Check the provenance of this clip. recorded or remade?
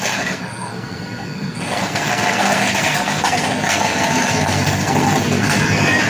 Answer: remade